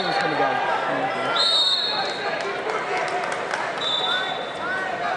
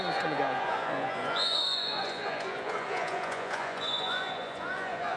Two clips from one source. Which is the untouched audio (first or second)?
first